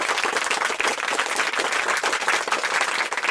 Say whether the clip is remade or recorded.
recorded